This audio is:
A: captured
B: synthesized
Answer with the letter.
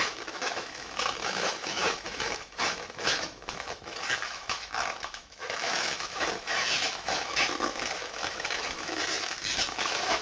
B